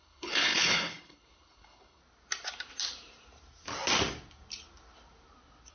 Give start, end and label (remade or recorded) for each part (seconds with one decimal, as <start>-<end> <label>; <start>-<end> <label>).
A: 0.0-2.0 remade; 2.0-5.7 recorded